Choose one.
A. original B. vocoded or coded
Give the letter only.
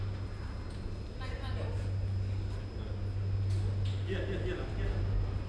A